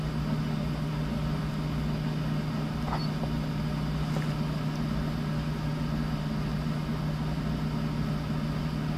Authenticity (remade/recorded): recorded